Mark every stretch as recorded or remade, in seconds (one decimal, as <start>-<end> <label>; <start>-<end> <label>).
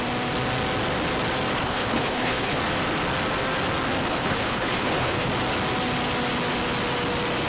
0.0-1.6 recorded; 1.6-2.6 remade; 2.6-4.0 recorded; 4.0-5.3 remade; 5.3-7.5 recorded